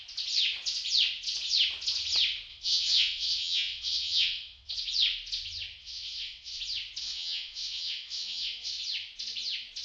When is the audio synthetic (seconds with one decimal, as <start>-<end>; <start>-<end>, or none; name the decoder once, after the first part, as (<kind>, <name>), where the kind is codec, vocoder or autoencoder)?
2.5-4.7 (vocoder, WaveNeXt); 5.8-6.6; 7.0-8.8